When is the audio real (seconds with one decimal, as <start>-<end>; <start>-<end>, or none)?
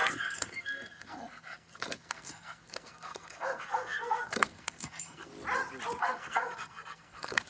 5.3-6.0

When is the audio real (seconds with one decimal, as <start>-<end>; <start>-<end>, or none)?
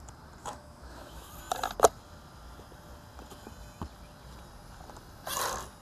0.0-0.4; 1.3-5.8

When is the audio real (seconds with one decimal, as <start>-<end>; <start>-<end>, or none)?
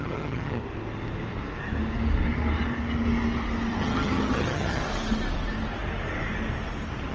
0.6-3.8; 4.8-7.1